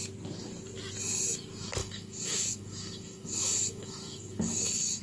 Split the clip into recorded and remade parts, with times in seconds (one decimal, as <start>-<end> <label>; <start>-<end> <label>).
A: 0.0-1.8 recorded; 1.8-5.0 remade